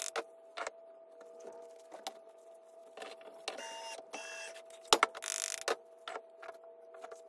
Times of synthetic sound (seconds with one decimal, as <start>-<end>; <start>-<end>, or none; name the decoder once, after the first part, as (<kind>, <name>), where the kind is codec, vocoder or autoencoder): none